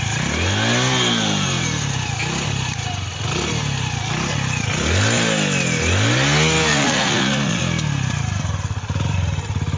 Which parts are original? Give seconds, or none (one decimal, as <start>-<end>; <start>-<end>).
0.0-6.7; 7.6-9.8